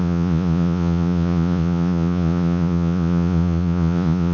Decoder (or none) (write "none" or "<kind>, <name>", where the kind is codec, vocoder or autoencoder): vocoder, Vocos